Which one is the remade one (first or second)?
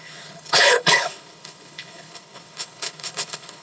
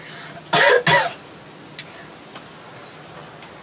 first